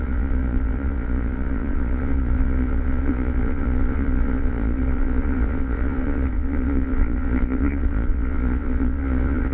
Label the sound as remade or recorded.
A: remade